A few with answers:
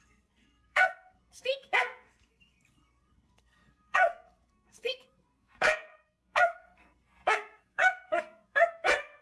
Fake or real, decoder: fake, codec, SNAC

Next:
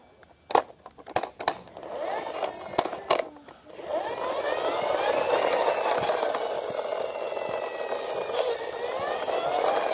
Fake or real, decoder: real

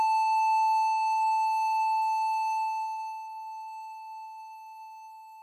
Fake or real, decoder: fake, codec, SNAC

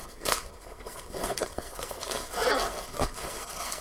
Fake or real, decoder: fake, codec, SNAC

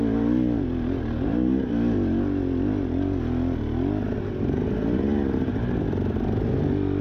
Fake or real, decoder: real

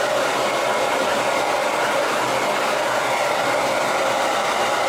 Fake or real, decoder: real